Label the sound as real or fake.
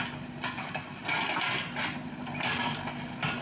real